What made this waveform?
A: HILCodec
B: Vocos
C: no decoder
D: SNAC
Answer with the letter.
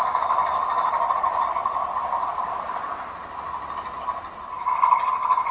C